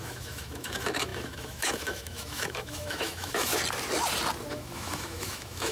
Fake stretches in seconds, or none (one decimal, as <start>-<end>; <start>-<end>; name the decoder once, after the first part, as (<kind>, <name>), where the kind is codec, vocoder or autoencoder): 0.0-3.6 (autoencoder, DAC-VAE); 4.5-5.7